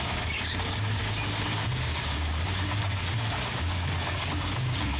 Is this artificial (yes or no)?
yes